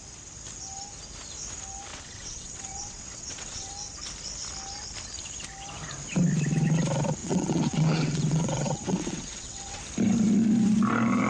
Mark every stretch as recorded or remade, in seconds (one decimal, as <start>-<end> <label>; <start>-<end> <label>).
0.0-1.9 recorded; 1.9-3.7 remade; 3.7-7.2 recorded; 7.2-9.8 remade; 9.8-11.3 recorded